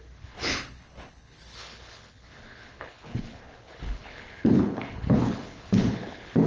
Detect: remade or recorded remade